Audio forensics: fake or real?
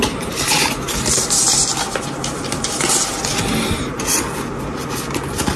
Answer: real